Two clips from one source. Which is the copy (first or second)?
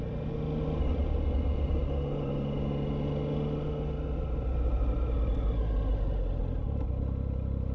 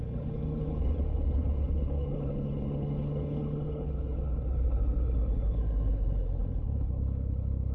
second